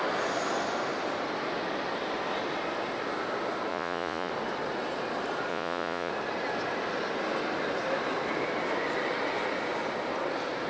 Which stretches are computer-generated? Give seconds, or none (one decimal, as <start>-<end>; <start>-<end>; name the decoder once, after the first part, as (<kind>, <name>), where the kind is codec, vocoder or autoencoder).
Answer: 3.7-4.3 (vocoder, Vocos); 5.5-6.1